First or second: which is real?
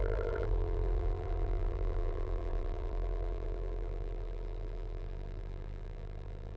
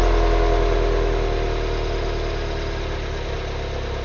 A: second